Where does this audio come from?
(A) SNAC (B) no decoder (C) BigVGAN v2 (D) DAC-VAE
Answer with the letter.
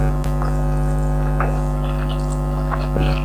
B